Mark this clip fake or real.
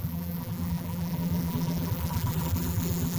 fake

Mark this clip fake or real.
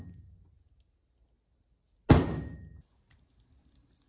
real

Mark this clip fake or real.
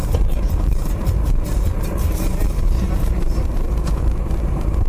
fake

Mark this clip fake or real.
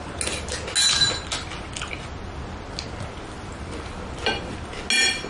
real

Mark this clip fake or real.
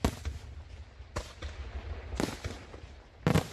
real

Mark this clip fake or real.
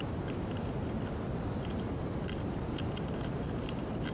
real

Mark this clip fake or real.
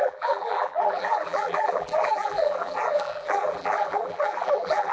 fake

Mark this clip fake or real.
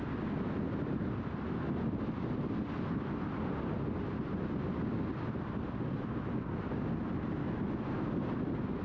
real